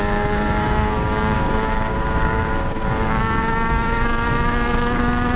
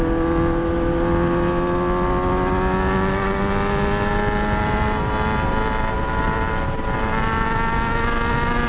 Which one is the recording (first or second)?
second